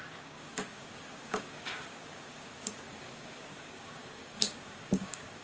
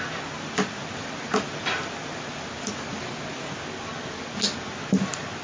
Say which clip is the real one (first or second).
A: second